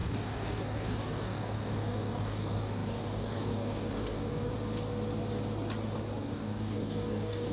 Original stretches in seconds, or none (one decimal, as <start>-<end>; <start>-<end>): 4.5-6.2